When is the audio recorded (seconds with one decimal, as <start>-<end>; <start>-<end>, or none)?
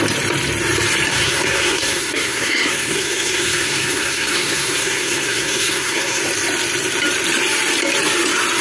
0.0-1.1; 6.2-8.6